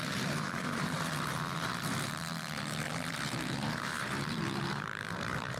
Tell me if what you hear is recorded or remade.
remade